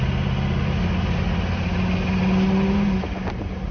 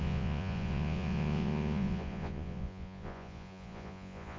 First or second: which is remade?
second